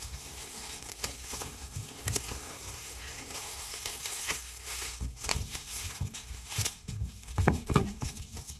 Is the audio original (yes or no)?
no